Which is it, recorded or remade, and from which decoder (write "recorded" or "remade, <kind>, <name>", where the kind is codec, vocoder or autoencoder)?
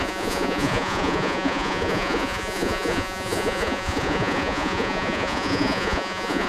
remade, vocoder, Vocos